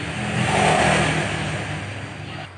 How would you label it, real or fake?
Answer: real